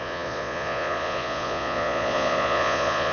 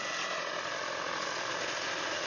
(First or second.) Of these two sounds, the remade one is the first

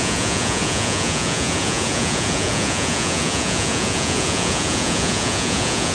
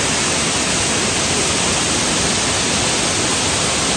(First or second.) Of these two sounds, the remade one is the first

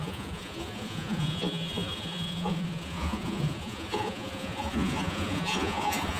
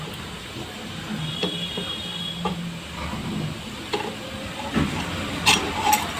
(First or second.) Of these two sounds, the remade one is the first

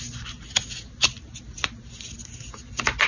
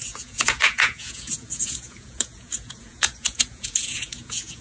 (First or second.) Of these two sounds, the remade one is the second